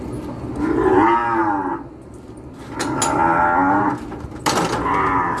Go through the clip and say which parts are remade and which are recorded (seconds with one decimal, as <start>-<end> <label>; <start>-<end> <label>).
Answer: 0.0-5.4 recorded